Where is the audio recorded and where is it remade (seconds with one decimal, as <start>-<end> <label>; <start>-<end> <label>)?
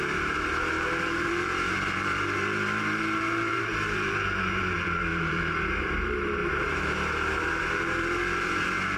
0.0-9.0 remade